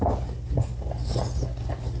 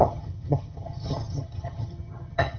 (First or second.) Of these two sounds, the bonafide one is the first